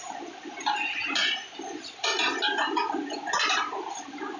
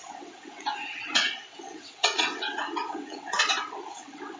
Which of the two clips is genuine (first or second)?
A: first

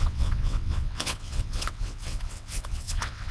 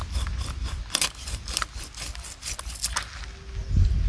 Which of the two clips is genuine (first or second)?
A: second